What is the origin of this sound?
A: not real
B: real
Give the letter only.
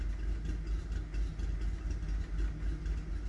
B